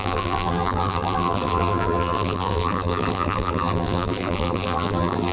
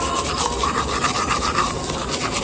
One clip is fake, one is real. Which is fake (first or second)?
first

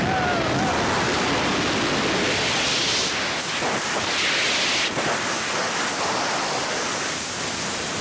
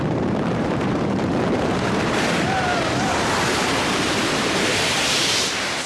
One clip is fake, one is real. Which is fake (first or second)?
second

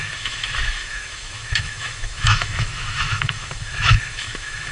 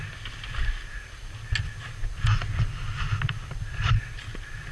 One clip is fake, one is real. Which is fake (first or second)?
first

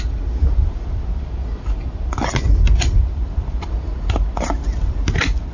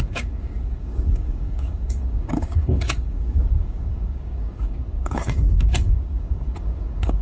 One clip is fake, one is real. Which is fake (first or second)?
second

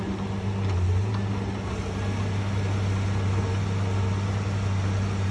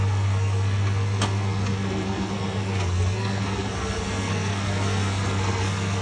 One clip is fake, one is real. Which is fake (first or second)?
second